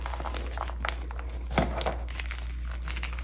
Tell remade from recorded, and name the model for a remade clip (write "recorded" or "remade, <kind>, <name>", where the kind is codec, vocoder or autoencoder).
recorded